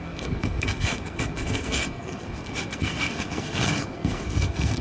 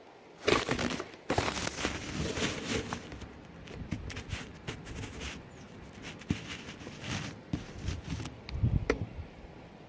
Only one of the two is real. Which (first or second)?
second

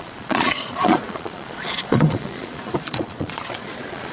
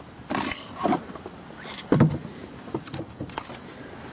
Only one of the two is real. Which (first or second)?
second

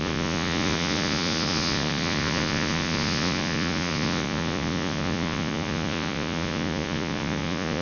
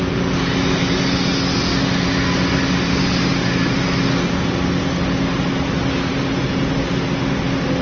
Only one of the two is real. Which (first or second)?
second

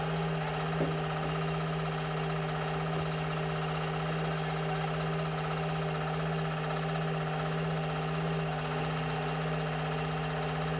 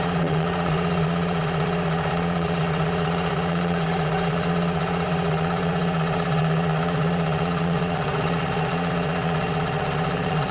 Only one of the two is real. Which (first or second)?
first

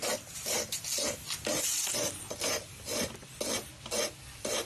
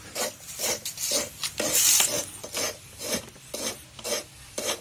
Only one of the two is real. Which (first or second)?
first